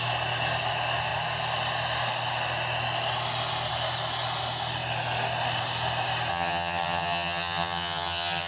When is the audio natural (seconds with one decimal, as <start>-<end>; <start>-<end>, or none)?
0.0-6.3